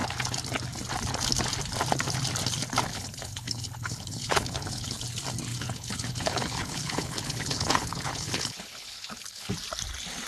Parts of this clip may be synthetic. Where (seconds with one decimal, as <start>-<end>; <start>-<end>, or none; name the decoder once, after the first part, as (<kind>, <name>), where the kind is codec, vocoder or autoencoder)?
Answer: 2.9-5.0 (codec, HILCodec); 5.5-9.5